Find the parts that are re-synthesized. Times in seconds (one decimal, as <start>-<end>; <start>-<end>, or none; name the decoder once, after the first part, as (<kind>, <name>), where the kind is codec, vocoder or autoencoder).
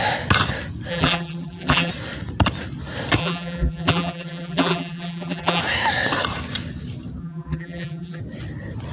0.9-1.9 (vocoder, BigVGAN v2); 3.2-5.6; 7.2-8.2